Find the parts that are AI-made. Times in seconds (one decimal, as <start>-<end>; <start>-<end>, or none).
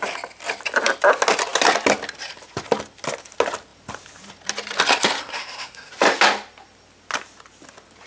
5.2-5.9